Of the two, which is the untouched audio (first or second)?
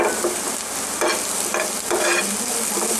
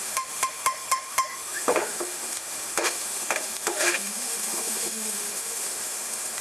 first